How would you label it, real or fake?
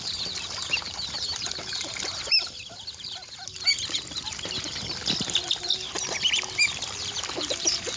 fake